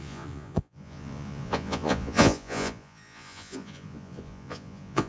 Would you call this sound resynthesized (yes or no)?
yes